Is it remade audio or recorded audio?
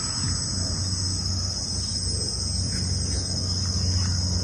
recorded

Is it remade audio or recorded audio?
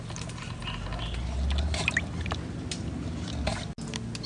recorded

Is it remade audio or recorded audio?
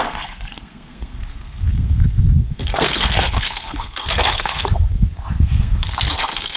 remade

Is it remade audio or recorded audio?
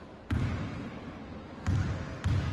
recorded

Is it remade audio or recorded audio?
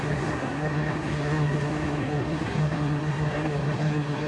remade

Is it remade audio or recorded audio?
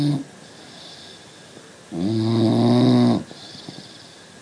recorded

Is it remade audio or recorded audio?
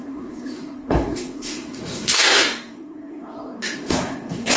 remade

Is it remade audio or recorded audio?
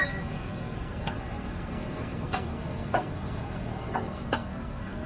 remade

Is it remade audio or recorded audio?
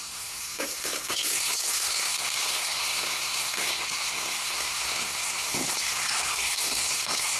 remade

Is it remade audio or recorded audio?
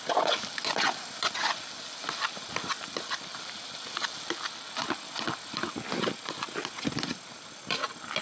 recorded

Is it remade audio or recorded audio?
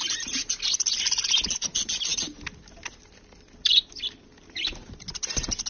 recorded